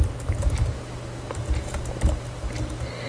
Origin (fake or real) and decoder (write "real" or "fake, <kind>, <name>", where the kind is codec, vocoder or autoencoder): real